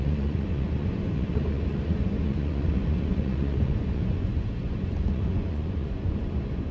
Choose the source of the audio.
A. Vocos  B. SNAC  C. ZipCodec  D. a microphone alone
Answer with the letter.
A